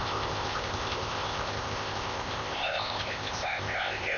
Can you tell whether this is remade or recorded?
remade